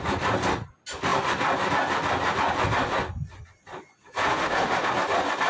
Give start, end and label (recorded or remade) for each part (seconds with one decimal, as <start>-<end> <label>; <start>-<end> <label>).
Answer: 0.0-4.3 recorded; 4.3-4.9 remade; 4.9-5.5 recorded